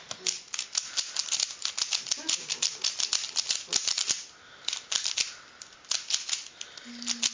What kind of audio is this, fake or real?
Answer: real